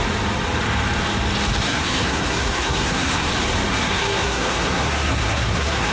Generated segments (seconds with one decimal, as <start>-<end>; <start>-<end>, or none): 1.6-3.3; 3.7-5.9